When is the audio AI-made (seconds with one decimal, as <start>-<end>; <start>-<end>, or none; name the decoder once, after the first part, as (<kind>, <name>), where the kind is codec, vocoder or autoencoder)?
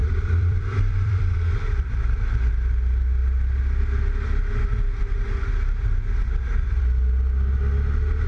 0.0-2.5 (vocoder, BigVGAN v2); 6.2-6.8